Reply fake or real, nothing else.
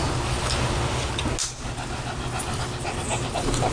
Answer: real